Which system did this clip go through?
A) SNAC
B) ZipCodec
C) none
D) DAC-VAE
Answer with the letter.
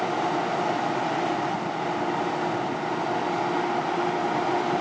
C